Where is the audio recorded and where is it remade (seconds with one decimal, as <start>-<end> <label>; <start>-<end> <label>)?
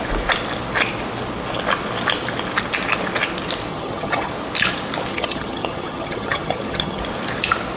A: 0.0-3.7 recorded; 3.7-4.3 remade; 4.3-5.1 recorded; 5.1-7.0 remade; 7.0-7.8 recorded